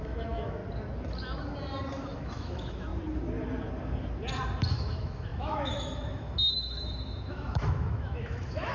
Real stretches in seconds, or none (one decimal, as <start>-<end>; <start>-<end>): 0.6-2.0; 2.9-4.7